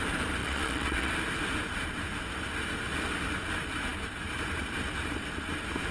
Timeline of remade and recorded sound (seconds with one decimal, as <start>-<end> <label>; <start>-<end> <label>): 0.0-0.4 recorded; 0.4-1.1 remade; 1.1-5.9 recorded